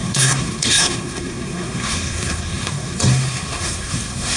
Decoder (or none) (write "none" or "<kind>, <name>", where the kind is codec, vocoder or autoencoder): codec, SNAC